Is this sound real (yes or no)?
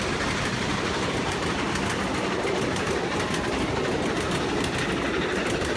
yes